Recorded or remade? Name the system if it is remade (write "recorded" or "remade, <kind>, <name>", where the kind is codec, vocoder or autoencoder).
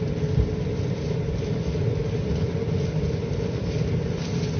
recorded